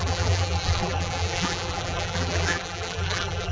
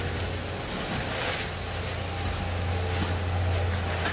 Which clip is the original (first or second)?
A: second